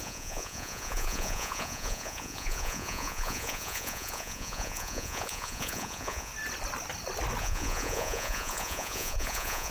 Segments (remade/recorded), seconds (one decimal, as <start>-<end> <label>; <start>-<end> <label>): 0.0-6.3 remade; 6.3-7.4 recorded; 7.4-9.7 remade